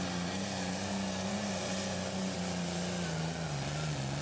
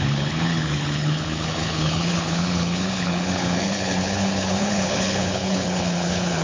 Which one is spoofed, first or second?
second